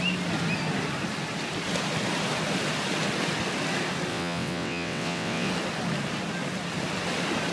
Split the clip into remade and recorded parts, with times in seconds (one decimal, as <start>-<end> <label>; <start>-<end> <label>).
0.0-4.1 recorded; 4.1-5.5 remade; 5.5-7.5 recorded